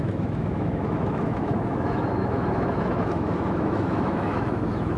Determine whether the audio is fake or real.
fake